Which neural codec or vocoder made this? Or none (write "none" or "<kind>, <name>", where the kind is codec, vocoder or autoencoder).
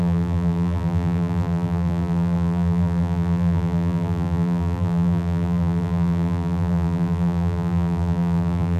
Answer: vocoder, BigVGAN v2